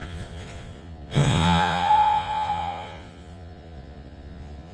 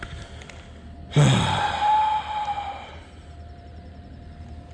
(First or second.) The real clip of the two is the second